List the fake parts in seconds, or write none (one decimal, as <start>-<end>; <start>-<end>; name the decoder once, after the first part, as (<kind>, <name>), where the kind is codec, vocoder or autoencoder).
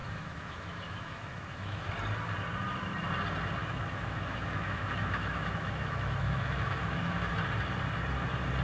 0.0-1.9 (autoencoder, DAC-VAE); 3.6-7.3